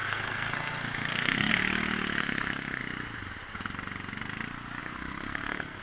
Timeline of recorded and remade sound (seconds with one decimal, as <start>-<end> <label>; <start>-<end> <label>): 0.0-1.5 remade; 1.5-2.2 recorded; 2.2-2.8 remade; 2.8-4.8 recorded; 4.8-5.8 remade